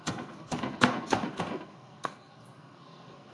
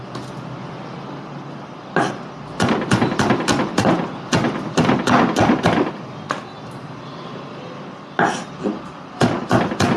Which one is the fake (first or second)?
first